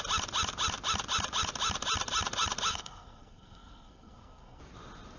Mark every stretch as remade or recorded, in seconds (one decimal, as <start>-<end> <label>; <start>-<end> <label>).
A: 0.0-2.7 recorded; 2.7-4.6 remade; 4.6-5.2 recorded